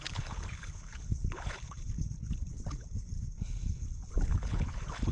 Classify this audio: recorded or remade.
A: remade